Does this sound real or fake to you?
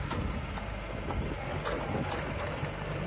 real